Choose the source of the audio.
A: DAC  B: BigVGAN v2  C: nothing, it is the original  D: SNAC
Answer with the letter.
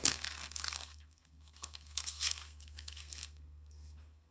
D